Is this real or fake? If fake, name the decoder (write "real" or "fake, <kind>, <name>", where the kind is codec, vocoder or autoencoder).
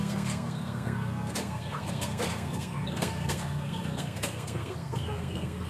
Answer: fake, codec, SNAC